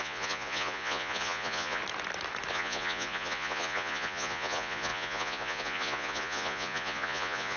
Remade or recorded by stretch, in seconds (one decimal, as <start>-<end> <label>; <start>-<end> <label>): 0.0-1.8 remade; 1.8-2.5 recorded; 2.5-7.6 remade